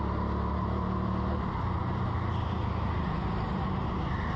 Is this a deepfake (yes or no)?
no